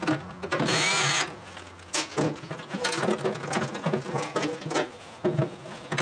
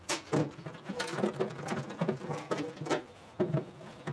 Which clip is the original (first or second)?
first